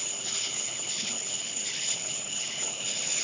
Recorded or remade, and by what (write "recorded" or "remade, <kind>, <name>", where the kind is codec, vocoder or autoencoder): remade, codec, HILCodec